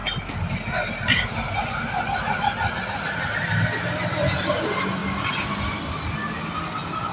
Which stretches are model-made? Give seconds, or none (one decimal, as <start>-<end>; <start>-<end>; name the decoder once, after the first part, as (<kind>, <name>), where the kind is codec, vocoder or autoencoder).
none